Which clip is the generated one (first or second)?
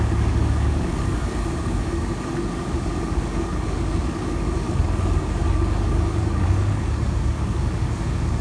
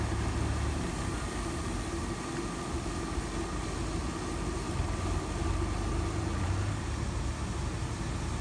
first